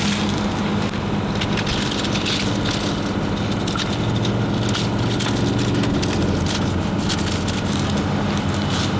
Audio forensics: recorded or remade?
recorded